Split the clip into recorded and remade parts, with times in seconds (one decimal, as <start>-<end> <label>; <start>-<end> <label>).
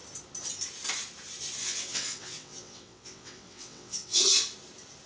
0.0-1.6 recorded; 1.6-4.2 remade; 4.2-5.1 recorded